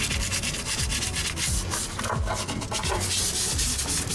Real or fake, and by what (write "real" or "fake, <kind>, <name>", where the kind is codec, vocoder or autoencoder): real